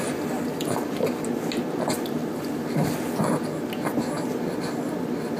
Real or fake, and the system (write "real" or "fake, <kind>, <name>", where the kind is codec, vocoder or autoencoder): real